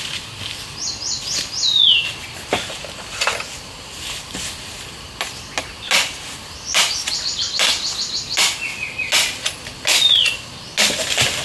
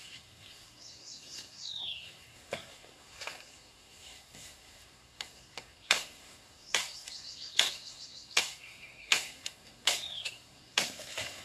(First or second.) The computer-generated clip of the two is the second